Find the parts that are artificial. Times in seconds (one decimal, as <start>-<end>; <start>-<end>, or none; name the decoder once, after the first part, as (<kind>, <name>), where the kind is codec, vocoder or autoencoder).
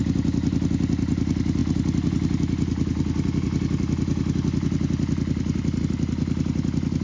none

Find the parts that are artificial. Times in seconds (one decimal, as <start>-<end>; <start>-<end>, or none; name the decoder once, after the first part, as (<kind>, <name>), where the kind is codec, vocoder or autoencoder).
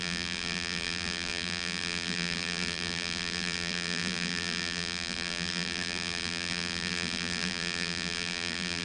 0.0-8.8 (vocoder, BigVGAN v2)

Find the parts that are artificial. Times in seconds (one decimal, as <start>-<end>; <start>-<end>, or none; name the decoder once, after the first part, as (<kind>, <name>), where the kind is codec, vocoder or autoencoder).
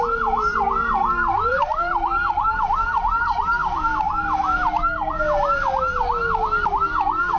1.5-2.6 (vocoder, BigVGAN v2)